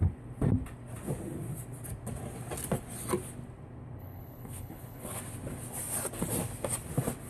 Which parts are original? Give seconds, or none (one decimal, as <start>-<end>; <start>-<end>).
0.0-4.0; 5.2-7.3